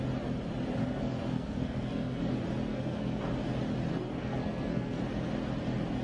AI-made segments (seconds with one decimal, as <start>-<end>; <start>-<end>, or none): 0.8-2.2; 2.7-3.2; 3.9-5.0